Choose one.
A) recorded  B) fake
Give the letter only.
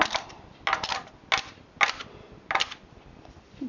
A